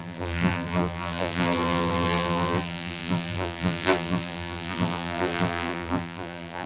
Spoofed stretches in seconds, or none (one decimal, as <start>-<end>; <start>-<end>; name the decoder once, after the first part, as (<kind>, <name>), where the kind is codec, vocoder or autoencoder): 0.0-6.7 (vocoder, BigVGAN v2)